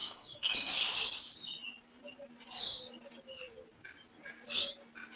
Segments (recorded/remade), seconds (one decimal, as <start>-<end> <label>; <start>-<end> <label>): 0.0-0.7 remade; 0.7-5.2 recorded